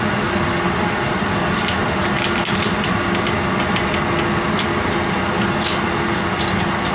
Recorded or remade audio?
recorded